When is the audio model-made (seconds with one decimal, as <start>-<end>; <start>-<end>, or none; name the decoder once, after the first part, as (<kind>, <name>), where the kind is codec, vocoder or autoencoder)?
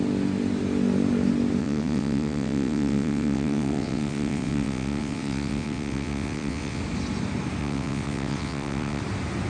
1.6-6.8 (vocoder, WaveNeXt); 7.6-9.0